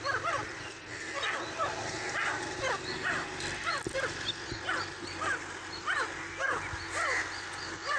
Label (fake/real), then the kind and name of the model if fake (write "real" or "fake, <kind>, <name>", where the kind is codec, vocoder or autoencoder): real